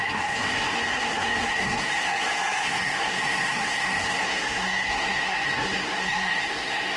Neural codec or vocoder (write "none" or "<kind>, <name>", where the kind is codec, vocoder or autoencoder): codec, SNAC